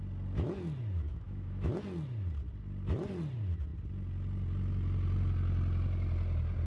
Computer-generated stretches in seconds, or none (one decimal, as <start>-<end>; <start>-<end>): 1.1-1.7